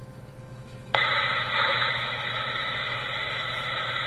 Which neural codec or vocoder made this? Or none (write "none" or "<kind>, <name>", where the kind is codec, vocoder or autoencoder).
autoencoder, DAC-VAE